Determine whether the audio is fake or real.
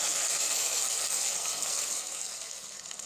fake